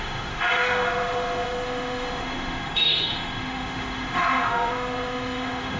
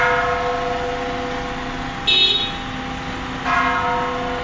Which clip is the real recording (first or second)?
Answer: second